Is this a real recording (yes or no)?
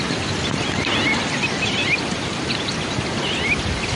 yes